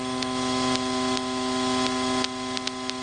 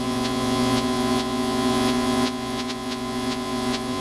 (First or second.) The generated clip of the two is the second